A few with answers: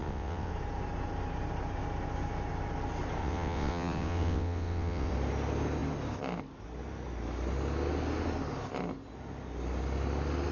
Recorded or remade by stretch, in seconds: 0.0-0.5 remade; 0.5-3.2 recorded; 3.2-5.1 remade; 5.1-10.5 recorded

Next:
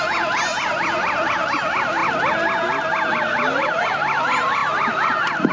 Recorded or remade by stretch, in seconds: 0.0-5.5 recorded